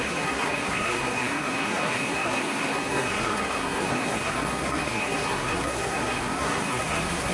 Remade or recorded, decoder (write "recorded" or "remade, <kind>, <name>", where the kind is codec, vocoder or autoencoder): remade, codec, SNAC